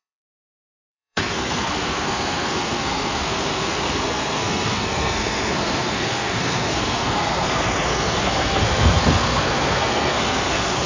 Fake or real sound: fake